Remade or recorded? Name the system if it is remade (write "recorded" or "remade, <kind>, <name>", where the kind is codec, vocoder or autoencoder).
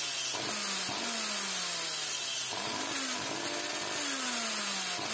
recorded